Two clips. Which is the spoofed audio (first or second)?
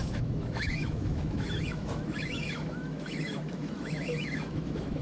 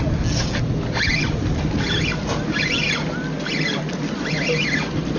first